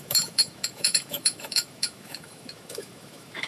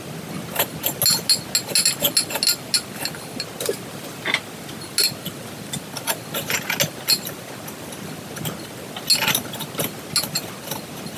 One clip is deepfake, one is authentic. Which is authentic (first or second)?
second